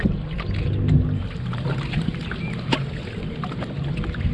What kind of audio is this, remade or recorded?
recorded